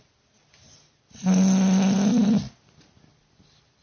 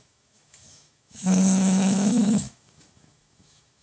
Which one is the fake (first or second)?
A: second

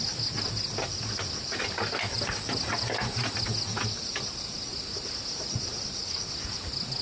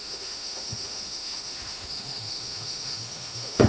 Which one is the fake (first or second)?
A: second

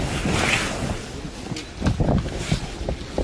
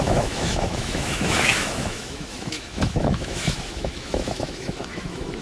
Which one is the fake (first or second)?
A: second